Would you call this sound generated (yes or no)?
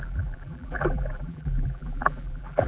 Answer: yes